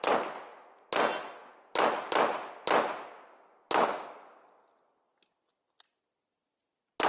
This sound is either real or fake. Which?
real